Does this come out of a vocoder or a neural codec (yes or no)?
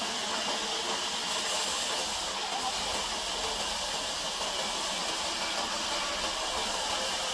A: no